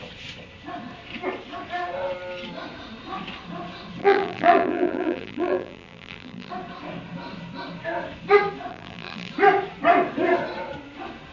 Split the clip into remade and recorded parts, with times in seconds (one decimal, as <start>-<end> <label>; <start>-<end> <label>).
0.0-4.0 recorded; 4.0-6.5 remade; 6.5-8.7 recorded; 8.7-9.3 remade; 9.3-11.3 recorded